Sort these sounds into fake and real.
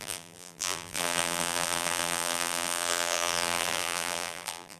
fake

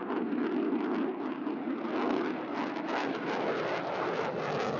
real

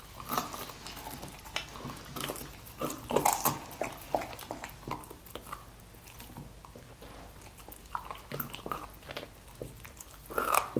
real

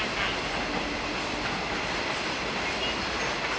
real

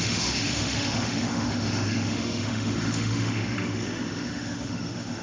fake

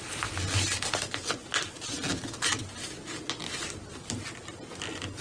real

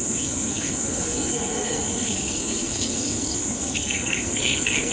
fake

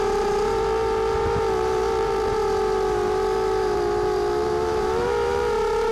fake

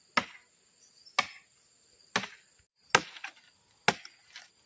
real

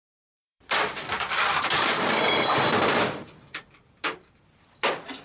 fake